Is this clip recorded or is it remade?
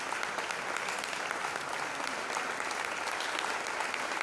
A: recorded